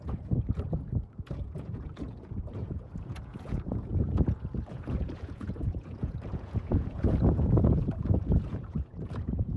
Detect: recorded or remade remade